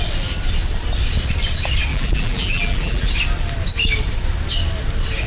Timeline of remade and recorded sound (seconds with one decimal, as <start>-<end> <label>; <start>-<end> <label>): 0.0-1.9 recorded; 1.9-3.1 remade; 3.1-5.3 recorded

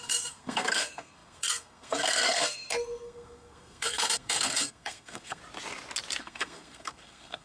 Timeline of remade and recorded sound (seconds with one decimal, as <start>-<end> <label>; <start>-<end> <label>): 0.0-5.4 remade; 5.4-6.2 recorded; 6.2-7.4 remade

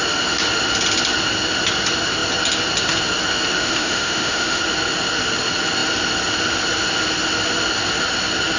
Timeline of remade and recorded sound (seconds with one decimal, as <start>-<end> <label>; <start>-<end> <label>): 0.0-3.6 recorded; 3.6-4.6 remade; 4.6-8.6 recorded

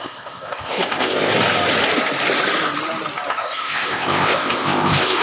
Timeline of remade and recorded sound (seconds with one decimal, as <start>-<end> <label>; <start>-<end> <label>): 0.0-1.3 remade; 1.3-3.3 recorded; 3.3-5.2 remade

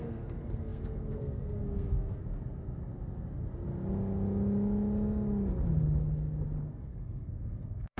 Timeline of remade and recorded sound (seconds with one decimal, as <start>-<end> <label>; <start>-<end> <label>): 0.0-2.2 remade; 2.2-6.6 recorded; 6.6-8.0 remade

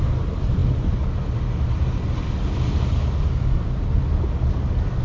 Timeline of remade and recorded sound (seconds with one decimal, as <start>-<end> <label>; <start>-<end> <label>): 0.0-5.0 recorded

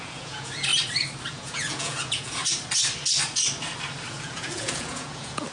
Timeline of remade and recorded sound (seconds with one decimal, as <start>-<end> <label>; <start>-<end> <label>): 0.0-0.7 remade; 0.7-1.3 recorded; 1.3-2.4 remade; 2.4-4.1 recorded; 4.1-5.5 remade

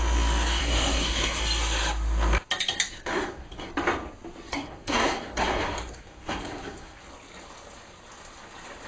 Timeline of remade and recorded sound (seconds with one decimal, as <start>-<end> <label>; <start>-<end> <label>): 0.0-0.6 recorded; 0.6-1.4 remade; 1.4-2.9 recorded; 2.9-3.7 remade; 3.7-4.5 recorded; 4.5-7.0 remade; 7.0-8.9 recorded